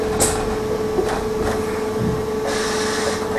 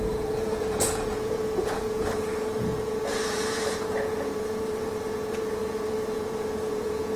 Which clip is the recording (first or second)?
first